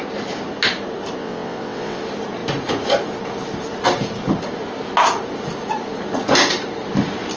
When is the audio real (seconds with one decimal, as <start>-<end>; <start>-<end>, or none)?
0.0-1.2; 2.0-7.4